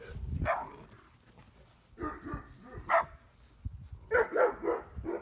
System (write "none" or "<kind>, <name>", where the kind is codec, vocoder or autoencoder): none